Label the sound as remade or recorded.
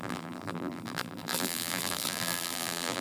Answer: remade